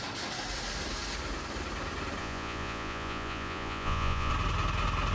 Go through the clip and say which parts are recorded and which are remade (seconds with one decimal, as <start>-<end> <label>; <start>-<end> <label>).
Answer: 0.0-2.2 recorded; 2.2-4.3 remade; 4.3-5.1 recorded